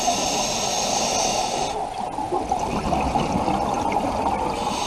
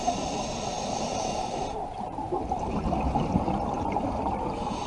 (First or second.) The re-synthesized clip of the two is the second